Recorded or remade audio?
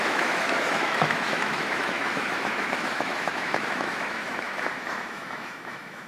remade